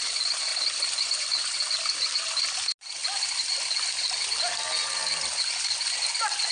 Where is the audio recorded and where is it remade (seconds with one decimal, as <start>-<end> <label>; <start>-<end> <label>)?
0.0-6.5 recorded